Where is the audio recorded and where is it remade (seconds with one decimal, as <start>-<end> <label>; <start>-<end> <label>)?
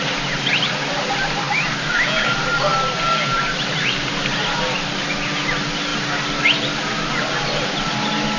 0.0-8.4 recorded